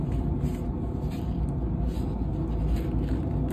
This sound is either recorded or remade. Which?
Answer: recorded